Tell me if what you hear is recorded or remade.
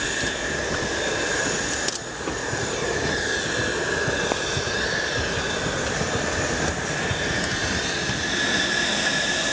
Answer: recorded